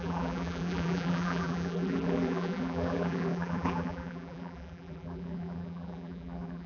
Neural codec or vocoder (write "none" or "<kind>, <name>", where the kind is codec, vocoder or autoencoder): vocoder, BigVGAN v2